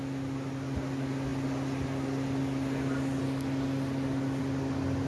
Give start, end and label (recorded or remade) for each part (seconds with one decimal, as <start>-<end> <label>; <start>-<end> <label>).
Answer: 0.0-5.1 recorded